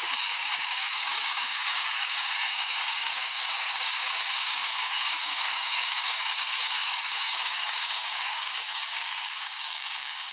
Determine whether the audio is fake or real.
fake